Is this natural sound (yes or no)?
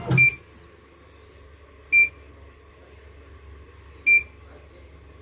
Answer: yes